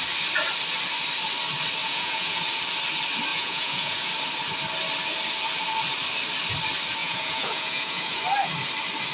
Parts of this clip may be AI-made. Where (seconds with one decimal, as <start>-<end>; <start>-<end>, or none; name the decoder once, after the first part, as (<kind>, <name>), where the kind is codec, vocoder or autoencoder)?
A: 1.8-2.4 (vocoder, Vocos); 3.3-4.1; 7.0-8.2